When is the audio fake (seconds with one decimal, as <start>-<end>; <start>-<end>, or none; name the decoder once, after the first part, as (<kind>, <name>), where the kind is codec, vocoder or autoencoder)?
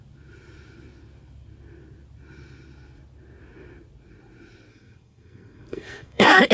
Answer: 4.7-6.5 (codec, SNAC)